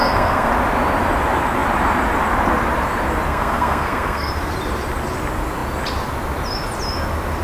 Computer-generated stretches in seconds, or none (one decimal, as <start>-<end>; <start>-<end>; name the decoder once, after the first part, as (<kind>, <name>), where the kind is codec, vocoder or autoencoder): 0.0-0.5 (codec, SNAC); 3.3-4.3